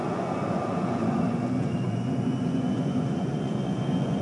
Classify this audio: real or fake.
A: fake